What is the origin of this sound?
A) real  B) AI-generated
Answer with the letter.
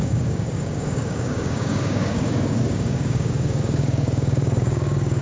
B